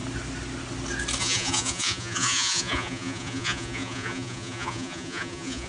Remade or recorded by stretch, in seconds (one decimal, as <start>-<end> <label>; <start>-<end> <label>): 0.0-1.2 recorded; 1.2-5.7 remade